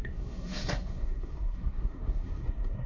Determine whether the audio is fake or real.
fake